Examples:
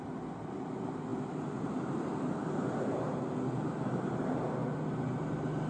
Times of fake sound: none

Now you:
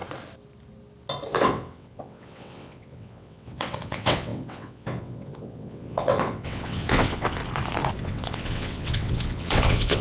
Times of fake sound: 1.3-7.4 (vocoder, WaveNeXt); 8.0-10.0

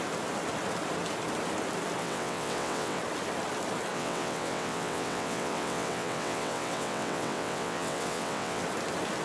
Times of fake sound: 2.0-3.0 (vocoder, WaveNeXt); 3.9-8.6

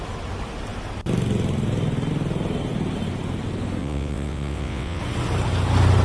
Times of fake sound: 3.8-5.0 (vocoder, WaveNeXt)